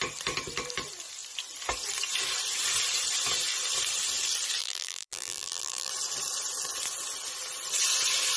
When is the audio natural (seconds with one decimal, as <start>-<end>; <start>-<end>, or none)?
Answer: 0.0-4.6; 5.9-8.4